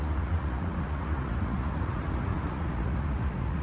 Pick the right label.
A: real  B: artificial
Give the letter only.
B